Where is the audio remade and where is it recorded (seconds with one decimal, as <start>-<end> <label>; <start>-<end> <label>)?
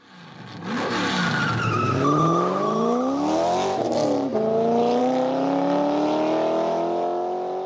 0.0-7.7 recorded